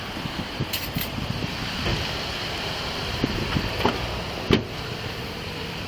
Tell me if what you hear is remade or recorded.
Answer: remade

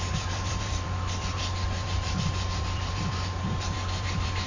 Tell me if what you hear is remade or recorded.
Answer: remade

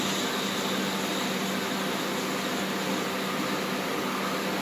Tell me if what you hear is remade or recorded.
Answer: recorded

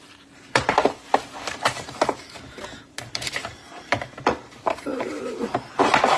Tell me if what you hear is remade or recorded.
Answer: remade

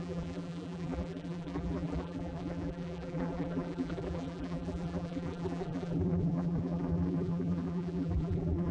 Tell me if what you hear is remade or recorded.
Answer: remade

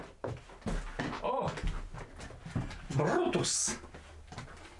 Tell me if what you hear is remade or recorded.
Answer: recorded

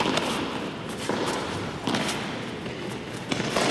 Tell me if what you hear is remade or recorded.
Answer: recorded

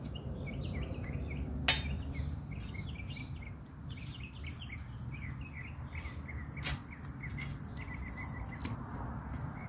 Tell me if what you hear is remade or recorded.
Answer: recorded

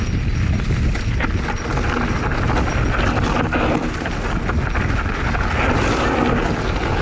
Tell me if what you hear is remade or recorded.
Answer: recorded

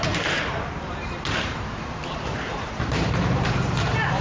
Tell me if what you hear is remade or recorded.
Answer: remade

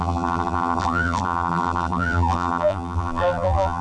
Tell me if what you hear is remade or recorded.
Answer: remade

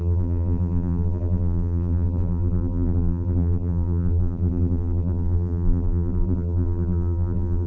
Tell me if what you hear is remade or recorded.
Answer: remade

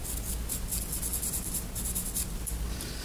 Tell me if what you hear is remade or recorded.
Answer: recorded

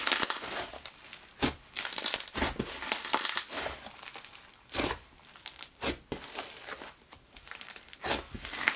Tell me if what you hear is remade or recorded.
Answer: remade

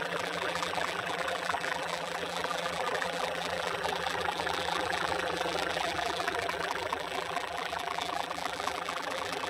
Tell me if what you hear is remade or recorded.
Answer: remade